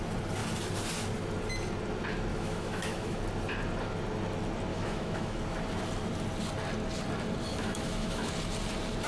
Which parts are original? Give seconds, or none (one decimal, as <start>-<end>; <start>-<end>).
0.0-2.3; 3.2-4.7; 5.4-7.5; 8.3-9.1